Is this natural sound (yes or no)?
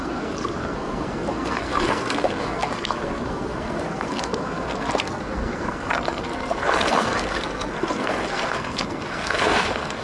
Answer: no